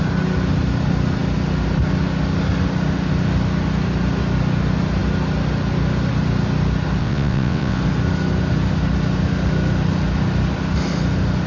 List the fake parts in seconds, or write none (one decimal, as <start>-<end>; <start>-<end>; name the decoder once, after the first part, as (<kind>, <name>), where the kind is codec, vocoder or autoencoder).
7.0-7.8 (vocoder, WaveNeXt)